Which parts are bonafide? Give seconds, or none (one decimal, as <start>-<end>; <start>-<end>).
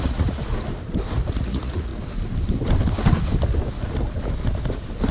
0.4-1.3; 1.9-5.1